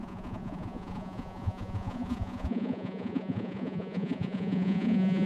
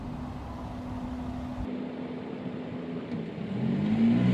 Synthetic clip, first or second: first